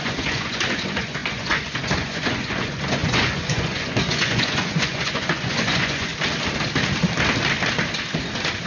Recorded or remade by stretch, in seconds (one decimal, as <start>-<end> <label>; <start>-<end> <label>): 0.0-6.1 remade; 6.1-8.7 recorded